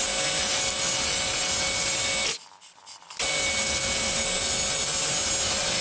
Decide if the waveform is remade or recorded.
recorded